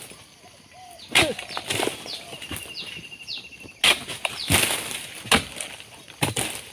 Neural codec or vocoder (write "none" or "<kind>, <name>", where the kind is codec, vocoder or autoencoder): none